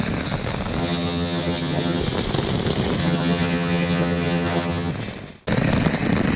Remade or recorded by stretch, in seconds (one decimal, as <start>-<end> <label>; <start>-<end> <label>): 0.0-0.8 recorded; 0.8-2.0 remade; 2.0-3.0 recorded; 3.0-4.9 remade; 4.9-6.4 recorded